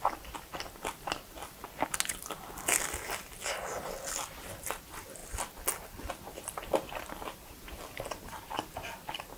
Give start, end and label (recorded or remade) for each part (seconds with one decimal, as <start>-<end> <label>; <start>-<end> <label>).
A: 0.0-9.4 recorded